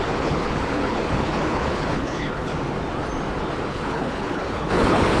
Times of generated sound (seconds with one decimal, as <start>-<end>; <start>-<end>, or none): 0.0-2.5; 3.7-5.2